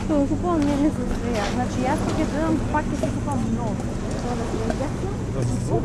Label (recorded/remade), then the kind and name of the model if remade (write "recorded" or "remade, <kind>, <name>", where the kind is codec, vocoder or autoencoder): recorded